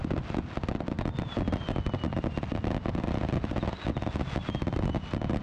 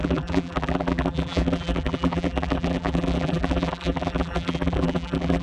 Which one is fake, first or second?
second